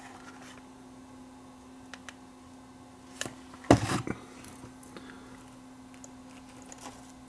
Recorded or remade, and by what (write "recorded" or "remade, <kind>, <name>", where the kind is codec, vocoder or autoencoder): recorded